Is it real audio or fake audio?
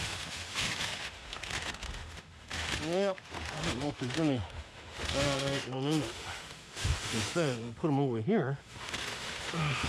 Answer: fake